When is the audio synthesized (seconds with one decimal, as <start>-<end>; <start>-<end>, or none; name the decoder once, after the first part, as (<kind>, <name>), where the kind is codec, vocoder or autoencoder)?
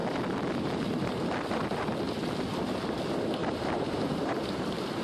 3.4-4.3 (vocoder, BigVGAN v2)